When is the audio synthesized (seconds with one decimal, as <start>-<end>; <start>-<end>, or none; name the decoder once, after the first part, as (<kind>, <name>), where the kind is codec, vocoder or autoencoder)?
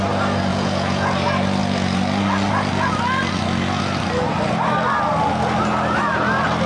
0.5-1.1 (vocoder, Vocos)